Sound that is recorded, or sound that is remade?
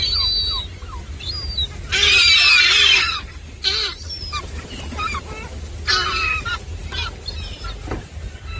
recorded